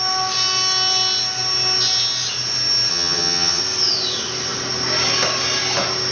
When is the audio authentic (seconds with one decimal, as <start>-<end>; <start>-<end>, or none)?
0.0-2.9; 3.6-6.1